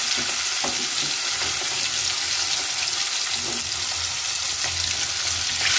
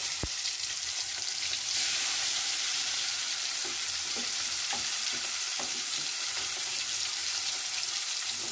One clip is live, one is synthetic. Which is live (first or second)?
first